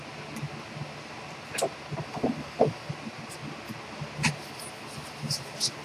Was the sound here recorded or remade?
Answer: recorded